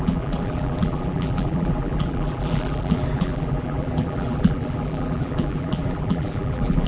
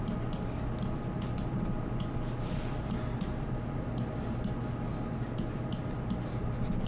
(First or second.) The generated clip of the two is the first